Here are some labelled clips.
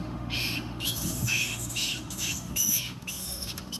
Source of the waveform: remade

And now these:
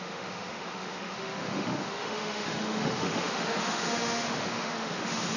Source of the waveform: remade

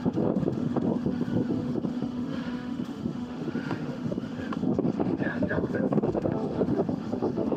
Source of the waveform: remade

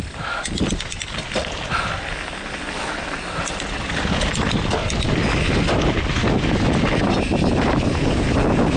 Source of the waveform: recorded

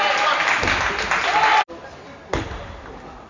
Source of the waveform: recorded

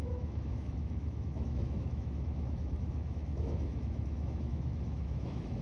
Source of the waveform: remade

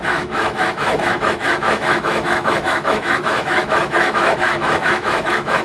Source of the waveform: remade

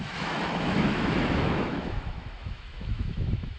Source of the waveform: remade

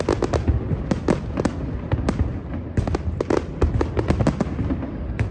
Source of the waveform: recorded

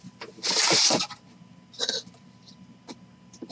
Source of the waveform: recorded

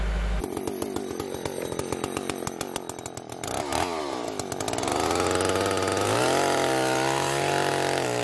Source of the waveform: recorded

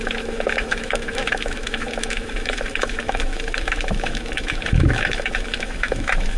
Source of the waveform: remade